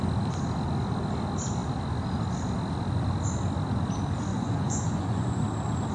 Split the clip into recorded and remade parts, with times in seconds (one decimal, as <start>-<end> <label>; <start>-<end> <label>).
0.0-4.3 recorded; 4.3-5.4 remade; 5.4-5.9 recorded